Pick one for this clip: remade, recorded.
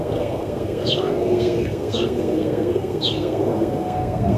remade